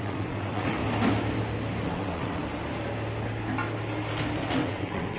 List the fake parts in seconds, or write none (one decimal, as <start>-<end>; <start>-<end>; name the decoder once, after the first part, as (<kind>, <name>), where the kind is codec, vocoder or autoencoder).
0.0-0.8 (vocoder, WaveNeXt); 1.9-2.4; 4.5-5.2